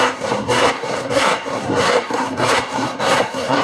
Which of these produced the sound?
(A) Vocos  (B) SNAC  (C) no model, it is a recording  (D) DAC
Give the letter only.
B